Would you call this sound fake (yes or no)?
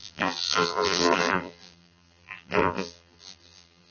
yes